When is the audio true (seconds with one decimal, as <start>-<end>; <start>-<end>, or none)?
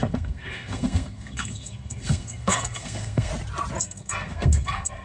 3.3-3.8